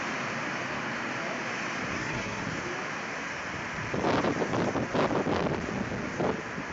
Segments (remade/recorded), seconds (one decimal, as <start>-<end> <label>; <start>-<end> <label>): 0.0-1.9 recorded; 1.9-2.4 remade; 2.4-6.7 recorded